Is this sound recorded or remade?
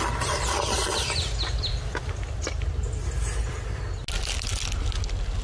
recorded